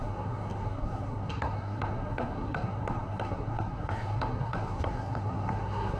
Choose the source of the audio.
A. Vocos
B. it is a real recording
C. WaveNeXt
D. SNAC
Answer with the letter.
D